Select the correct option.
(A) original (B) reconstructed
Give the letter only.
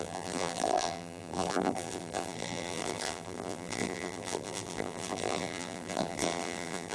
B